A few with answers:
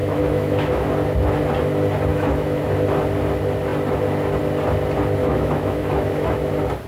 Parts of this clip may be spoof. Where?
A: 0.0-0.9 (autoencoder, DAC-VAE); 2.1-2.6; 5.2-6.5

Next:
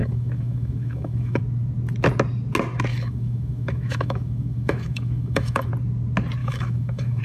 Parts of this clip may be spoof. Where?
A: 0.0-1.4 (autoencoder, DAC-VAE); 2.9-5.7; 6.4-7.2

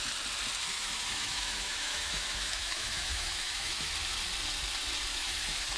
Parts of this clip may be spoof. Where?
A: 0.7-3.9 (autoencoder, DAC-VAE); 5.1-5.8

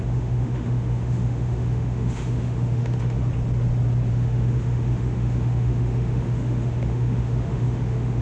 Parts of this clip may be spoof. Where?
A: 0.0-3.2 (autoencoder, DAC-VAE); 4.1-8.2